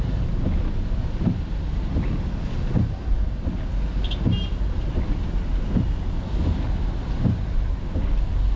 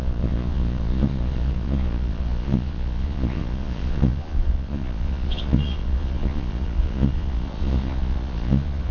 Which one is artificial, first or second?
second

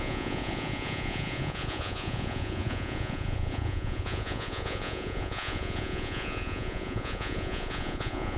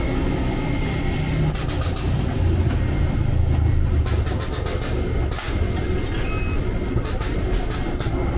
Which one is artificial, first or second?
first